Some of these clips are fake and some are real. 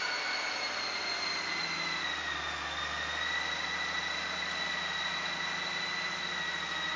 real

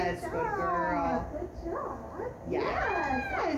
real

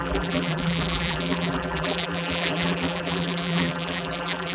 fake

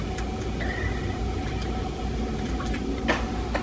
real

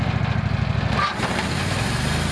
real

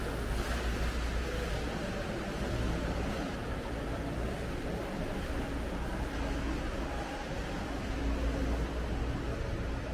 real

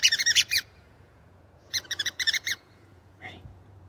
fake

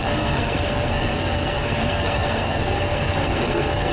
fake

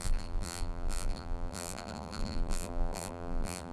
fake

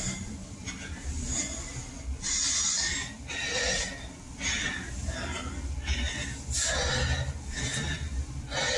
real